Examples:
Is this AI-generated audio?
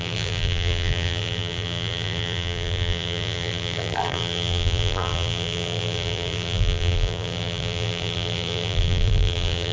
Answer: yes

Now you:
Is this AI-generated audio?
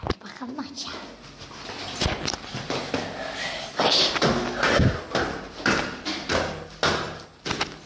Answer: no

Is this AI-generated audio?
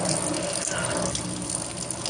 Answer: no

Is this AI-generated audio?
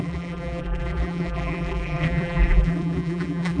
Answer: yes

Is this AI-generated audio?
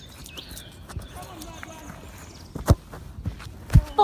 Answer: no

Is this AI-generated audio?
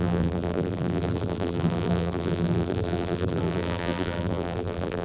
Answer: yes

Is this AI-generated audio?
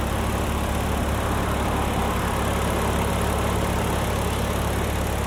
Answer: no